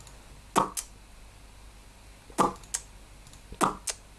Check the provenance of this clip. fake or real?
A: real